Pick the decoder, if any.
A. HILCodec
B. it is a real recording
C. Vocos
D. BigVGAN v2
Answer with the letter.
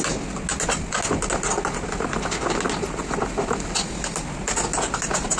B